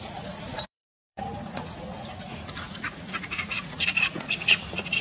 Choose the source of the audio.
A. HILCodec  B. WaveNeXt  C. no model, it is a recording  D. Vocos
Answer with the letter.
D